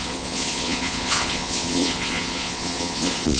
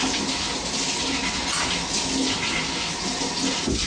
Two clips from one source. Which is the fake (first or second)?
first